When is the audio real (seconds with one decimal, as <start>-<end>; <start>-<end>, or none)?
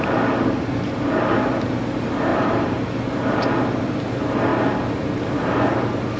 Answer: 0.0-2.3; 2.9-6.2